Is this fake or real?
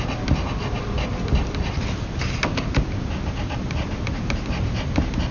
real